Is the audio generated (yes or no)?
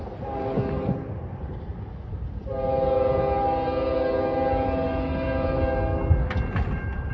no